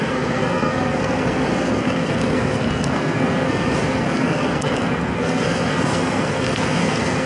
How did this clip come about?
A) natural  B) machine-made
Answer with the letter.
B